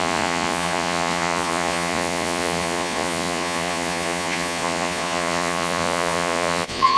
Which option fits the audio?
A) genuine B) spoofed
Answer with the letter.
B